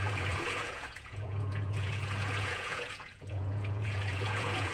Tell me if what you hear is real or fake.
fake